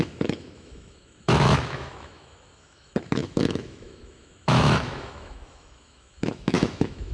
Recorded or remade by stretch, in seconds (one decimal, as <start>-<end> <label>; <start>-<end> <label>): 0.0-7.1 remade